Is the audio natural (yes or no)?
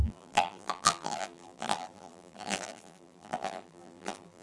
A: no